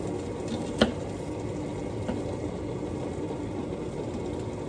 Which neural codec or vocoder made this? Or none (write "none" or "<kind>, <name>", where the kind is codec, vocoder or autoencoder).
none